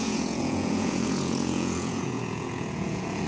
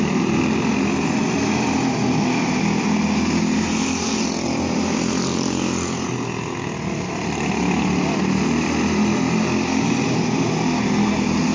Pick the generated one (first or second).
first